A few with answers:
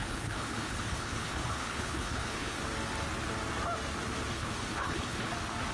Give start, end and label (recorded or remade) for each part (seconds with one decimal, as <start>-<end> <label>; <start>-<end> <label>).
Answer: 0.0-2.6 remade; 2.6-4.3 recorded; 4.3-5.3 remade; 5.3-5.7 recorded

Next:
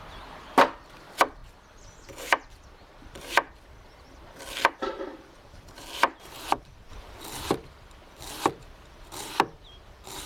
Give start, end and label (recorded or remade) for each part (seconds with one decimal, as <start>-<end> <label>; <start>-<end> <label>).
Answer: 0.0-10.3 remade

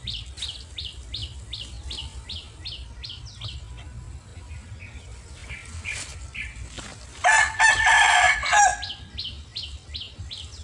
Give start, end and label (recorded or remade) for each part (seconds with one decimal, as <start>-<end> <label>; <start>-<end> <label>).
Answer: 0.0-10.6 recorded